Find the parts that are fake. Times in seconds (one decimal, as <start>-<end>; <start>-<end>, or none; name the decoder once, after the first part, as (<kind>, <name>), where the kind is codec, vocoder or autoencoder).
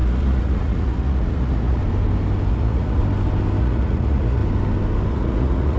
0.0-1.8 (vocoder, Vocos); 2.5-3.0; 3.6-4.4; 5.1-5.8